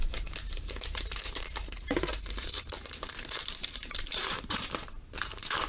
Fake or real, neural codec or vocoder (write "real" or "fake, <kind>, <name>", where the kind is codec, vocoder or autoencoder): fake, vocoder, BigVGAN v2